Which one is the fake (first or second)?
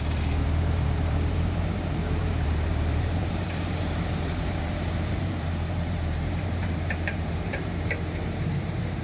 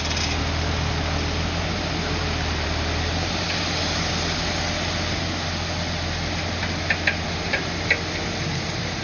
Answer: first